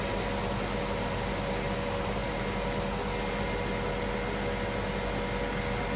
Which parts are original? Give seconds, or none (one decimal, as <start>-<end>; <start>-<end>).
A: 0.0-6.0

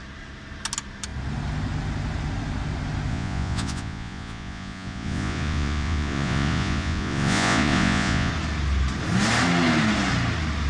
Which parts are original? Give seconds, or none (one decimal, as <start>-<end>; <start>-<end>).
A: 0.0-3.1; 8.3-10.7

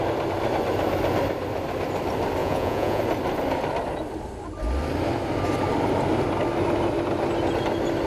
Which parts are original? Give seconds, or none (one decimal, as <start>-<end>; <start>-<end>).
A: 0.0-2.4; 3.0-8.1